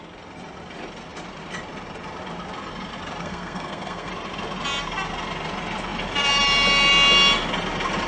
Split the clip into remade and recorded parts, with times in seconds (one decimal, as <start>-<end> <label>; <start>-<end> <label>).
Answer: 0.0-3.2 recorded; 3.2-4.1 remade; 4.1-8.1 recorded

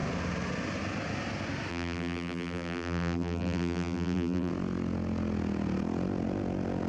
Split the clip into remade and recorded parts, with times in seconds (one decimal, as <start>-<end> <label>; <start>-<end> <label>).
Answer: 0.0-1.7 recorded; 1.7-4.5 remade; 4.5-6.9 recorded

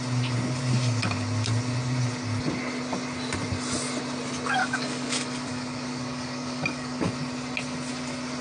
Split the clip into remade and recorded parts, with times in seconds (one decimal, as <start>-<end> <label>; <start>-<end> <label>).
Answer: 0.0-4.6 recorded; 4.6-7.1 remade; 7.1-8.4 recorded

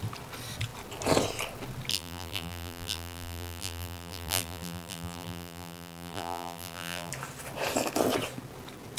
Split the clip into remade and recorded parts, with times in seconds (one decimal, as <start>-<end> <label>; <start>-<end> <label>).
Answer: 0.0-1.9 recorded; 1.9-7.1 remade; 7.1-9.0 recorded

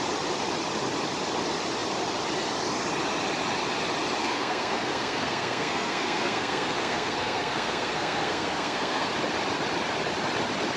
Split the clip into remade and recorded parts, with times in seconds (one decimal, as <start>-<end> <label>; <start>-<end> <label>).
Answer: 0.0-4.2 recorded; 4.2-9.1 remade; 9.1-10.8 recorded

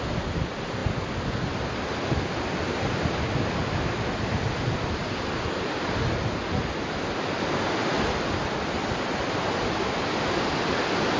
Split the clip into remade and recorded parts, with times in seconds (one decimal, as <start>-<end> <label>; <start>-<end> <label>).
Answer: 0.0-11.2 recorded

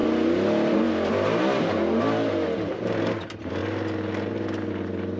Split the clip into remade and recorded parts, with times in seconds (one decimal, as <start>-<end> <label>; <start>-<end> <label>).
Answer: 0.0-5.2 recorded

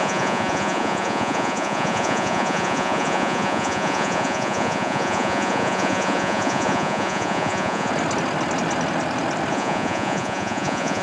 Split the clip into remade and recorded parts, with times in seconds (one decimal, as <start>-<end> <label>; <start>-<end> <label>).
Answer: 0.0-7.9 remade; 7.9-9.5 recorded; 9.5-11.0 remade